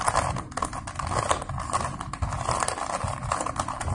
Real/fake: real